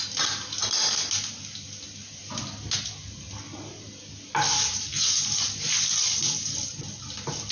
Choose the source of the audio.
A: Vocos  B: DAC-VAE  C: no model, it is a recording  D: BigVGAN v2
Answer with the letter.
C